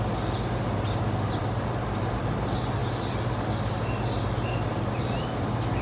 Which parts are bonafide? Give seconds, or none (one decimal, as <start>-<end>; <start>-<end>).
0.0-5.8